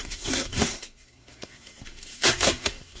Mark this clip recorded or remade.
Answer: remade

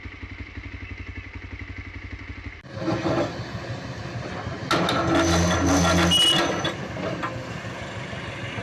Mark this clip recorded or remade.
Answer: recorded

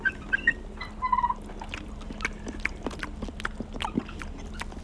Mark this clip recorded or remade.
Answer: recorded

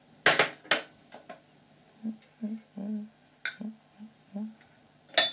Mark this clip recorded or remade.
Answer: recorded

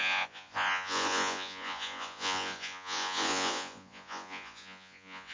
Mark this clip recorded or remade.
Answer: remade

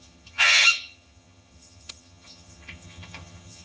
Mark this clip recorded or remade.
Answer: remade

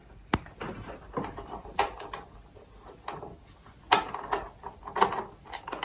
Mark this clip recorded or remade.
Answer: recorded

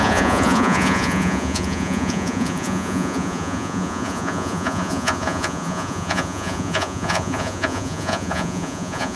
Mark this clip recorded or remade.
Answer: remade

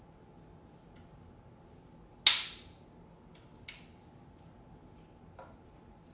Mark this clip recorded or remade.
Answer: recorded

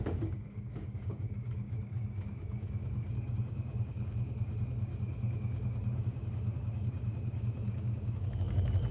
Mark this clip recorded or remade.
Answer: remade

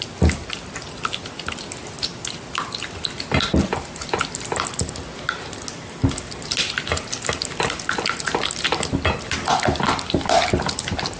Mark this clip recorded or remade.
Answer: recorded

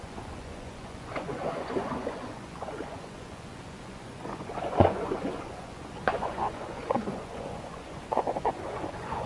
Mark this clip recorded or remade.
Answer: remade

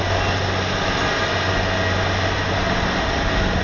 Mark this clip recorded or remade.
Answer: recorded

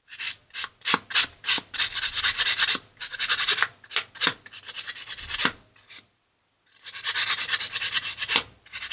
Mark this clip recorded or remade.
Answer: recorded